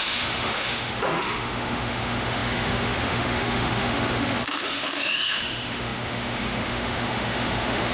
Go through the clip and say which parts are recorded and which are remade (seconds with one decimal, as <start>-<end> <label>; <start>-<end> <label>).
0.0-7.9 remade